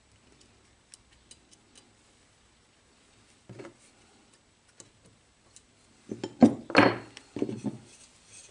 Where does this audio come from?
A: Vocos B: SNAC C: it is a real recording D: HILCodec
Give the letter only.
C